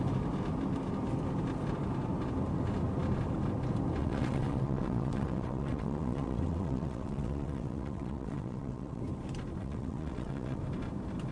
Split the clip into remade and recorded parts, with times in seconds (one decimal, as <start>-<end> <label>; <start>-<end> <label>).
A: 0.0-4.0 recorded; 4.0-9.0 remade; 9.0-9.6 recorded; 9.6-10.6 remade; 10.6-11.3 recorded